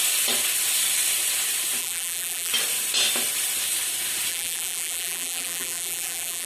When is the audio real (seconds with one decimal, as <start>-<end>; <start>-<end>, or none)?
0.0-1.8; 2.5-4.3